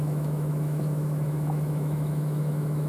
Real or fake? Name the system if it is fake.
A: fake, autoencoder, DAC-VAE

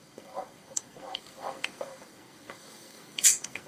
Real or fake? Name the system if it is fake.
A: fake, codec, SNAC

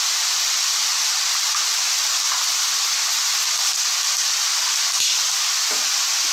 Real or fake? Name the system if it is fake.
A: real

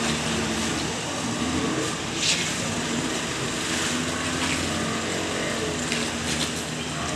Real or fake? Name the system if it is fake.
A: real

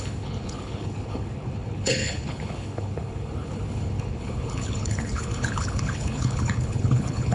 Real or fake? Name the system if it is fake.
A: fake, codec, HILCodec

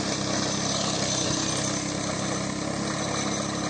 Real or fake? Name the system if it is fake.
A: real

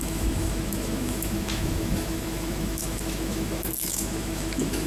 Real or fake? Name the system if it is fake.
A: fake, autoencoder, DAC-VAE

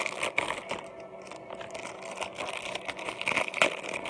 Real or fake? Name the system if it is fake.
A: real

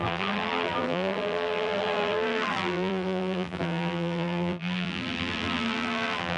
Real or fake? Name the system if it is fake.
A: fake, vocoder, BigVGAN v2